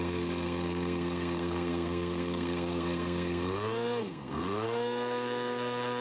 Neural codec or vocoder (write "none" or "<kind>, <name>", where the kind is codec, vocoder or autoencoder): codec, SNAC